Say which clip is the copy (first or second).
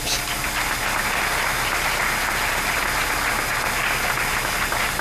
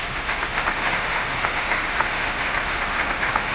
second